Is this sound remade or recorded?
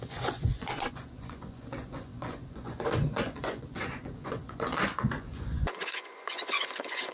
remade